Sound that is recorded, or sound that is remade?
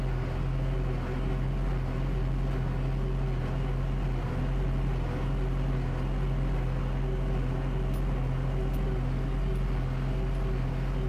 recorded